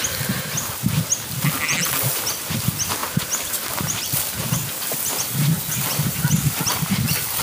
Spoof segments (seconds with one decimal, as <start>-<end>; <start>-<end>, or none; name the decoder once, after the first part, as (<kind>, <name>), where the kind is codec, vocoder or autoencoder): none